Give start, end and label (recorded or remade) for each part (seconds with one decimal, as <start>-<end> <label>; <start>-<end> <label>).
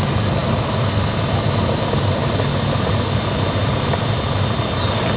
0.0-5.2 recorded